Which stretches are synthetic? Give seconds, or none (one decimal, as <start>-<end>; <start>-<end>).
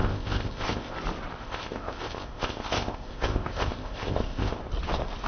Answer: 0.0-0.9; 1.4-4.6